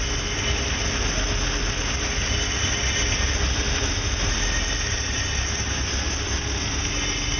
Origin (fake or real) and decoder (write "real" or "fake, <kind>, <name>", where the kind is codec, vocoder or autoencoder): real